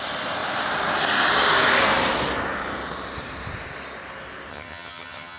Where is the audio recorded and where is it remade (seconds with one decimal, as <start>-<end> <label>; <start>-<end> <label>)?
0.0-4.5 recorded; 4.5-5.4 remade